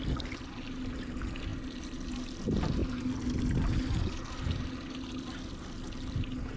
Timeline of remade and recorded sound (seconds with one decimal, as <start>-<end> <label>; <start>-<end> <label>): 0.0-6.6 recorded